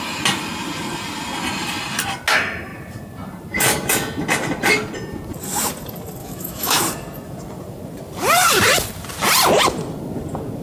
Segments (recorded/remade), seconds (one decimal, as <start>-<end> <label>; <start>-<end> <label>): 0.0-6.2 recorded; 6.2-6.8 remade; 6.8-10.6 recorded